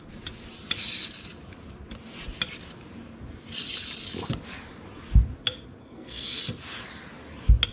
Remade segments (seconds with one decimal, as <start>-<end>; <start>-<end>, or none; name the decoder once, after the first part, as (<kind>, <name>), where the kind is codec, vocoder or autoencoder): 5.8-6.4 (codec, SNAC)